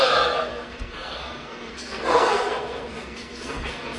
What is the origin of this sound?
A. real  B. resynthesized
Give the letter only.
B